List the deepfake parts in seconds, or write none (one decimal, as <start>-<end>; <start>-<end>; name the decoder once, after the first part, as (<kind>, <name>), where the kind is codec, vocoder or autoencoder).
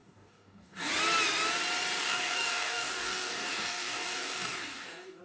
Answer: 0.0-0.9 (codec, DAC); 2.0-5.2